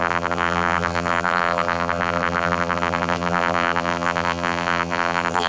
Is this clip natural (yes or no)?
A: no